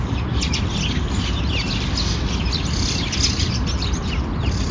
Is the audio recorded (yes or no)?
yes